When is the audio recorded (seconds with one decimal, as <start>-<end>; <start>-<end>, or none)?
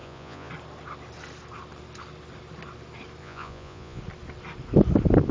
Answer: 0.5-3.2; 4.0-5.3